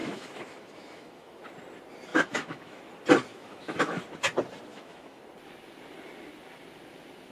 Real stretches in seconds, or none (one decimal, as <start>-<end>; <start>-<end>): 1.4-2.1; 2.8-3.3; 4.0-4.7; 5.2-7.3